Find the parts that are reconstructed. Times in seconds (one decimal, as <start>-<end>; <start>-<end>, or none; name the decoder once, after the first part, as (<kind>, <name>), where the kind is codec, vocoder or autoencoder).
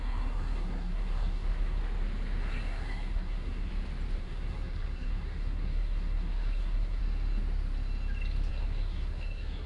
0.0-1.8 (codec, SNAC); 2.4-3.7; 4.2-7.0; 8.5-9.7